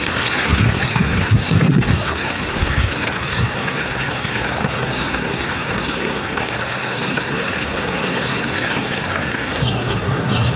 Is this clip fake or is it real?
fake